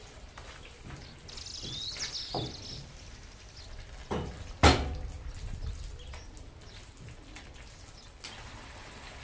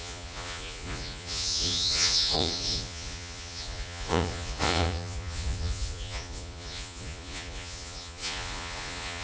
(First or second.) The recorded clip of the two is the first